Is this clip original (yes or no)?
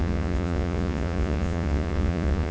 no